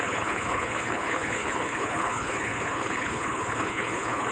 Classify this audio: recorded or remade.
remade